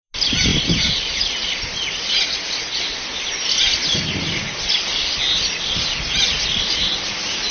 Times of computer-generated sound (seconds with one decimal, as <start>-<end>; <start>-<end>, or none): none

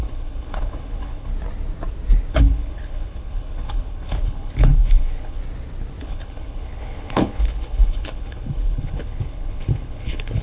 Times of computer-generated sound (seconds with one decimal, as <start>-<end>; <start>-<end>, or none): 0.0-1.3; 2.3-5.4; 6.0-10.4

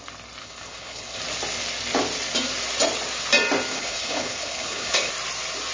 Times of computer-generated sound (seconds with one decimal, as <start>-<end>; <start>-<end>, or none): 0.4-1.2; 3.7-5.1

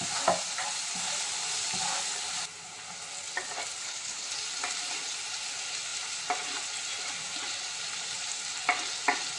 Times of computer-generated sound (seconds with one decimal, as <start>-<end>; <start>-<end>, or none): 3.8-4.3

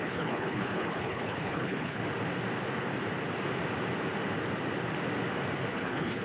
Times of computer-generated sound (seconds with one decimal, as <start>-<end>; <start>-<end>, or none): 0.0-2.0; 5.7-6.2

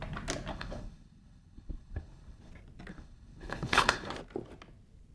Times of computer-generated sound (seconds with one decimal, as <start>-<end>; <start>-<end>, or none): 0.5-2.5; 2.9-4.1

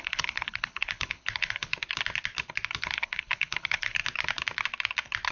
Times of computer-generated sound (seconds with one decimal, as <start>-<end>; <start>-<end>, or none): 0.0-1.7; 2.8-4.0

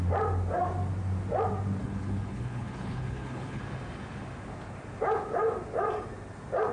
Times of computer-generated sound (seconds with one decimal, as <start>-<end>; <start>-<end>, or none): 1.8-3.6